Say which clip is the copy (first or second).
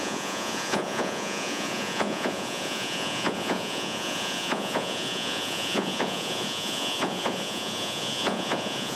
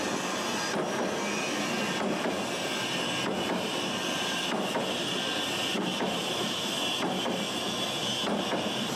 first